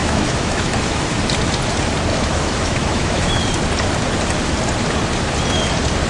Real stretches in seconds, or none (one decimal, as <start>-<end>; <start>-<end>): 1.2-2.1; 3.4-6.1